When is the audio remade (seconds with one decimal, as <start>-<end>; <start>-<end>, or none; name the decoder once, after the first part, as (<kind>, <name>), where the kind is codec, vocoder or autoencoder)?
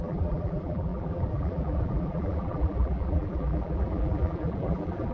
0.0-5.1 (vocoder, BigVGAN v2)